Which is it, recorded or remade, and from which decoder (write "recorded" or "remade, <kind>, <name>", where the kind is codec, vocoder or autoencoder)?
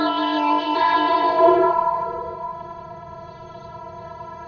remade, codec, ZipCodec